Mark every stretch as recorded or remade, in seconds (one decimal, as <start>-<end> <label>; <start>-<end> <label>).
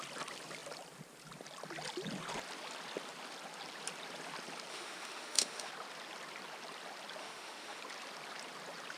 0.0-4.7 recorded; 4.7-5.7 remade; 5.7-7.2 recorded; 7.2-7.8 remade; 7.8-9.0 recorded